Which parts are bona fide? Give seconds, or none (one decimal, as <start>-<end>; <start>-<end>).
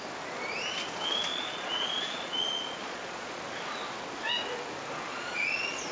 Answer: 0.0-1.3; 3.4-5.1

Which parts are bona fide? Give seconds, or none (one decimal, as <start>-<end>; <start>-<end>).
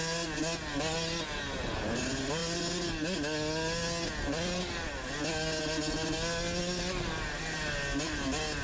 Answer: 0.0-8.6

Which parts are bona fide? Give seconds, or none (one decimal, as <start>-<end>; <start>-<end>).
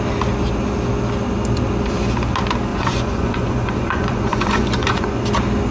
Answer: 0.0-2.7; 5.2-5.7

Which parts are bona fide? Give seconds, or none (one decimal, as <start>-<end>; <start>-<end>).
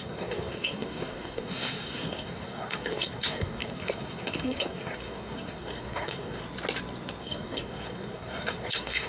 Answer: 6.4-7.2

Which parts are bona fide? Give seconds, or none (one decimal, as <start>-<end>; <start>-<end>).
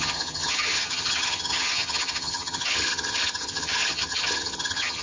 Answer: none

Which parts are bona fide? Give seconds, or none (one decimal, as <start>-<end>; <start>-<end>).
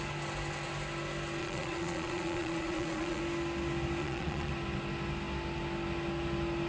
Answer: 0.0-1.4; 3.2-4.0; 4.5-6.7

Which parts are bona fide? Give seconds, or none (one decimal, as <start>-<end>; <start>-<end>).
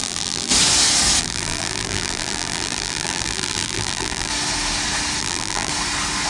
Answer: 0.5-1.2; 4.3-5.2; 5.7-6.3